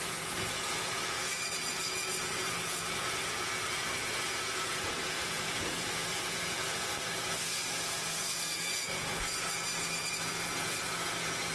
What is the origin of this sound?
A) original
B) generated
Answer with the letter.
B